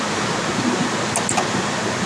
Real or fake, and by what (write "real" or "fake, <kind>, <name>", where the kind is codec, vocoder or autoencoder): real